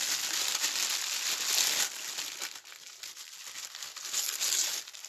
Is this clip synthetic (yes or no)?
no